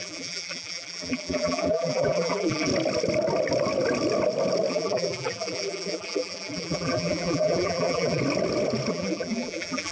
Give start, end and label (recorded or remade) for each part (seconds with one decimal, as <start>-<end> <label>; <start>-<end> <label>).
0.0-2.7 remade; 2.7-4.7 recorded; 4.7-8.2 remade; 8.2-8.9 recorded; 8.9-9.9 remade